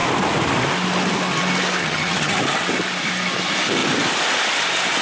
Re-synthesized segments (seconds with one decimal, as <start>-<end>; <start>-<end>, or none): 1.8-2.4